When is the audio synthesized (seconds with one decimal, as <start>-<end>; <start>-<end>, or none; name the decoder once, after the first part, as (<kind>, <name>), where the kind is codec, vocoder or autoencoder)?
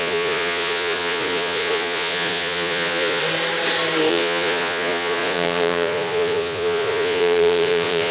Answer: 0.0-3.2 (vocoder, Vocos); 4.1-8.1